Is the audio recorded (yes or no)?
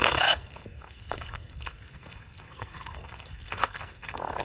no